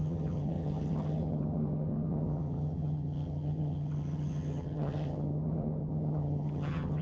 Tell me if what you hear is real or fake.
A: fake